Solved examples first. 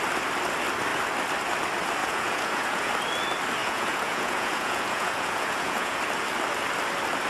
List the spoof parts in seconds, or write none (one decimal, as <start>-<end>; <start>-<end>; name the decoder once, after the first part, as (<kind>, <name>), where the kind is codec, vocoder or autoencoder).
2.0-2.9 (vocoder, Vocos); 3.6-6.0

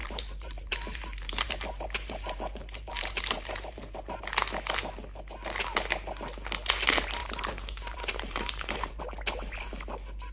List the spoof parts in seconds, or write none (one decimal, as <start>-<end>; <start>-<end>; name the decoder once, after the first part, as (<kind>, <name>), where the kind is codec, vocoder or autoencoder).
0.0-4.2 (vocoder, BigVGAN v2); 7.2-9.0

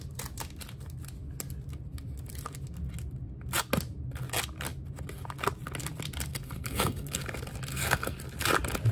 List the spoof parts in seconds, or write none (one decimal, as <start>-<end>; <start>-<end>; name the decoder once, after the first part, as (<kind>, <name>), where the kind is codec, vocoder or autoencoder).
6.3-7.2 (codec, SNAC); 7.7-8.2